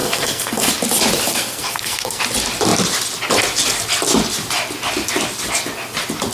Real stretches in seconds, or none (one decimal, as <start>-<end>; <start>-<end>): 0.7-1.3; 2.2-6.3